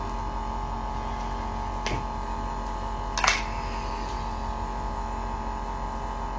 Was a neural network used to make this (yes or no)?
no